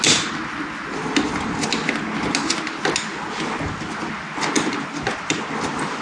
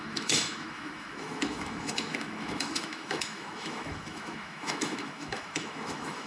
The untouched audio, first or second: first